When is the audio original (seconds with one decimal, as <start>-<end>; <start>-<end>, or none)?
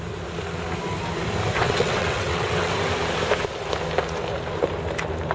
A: 0.0-1.6; 2.7-5.3